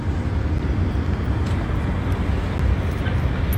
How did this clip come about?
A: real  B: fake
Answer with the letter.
A